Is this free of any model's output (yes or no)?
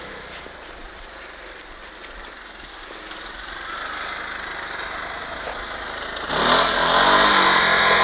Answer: yes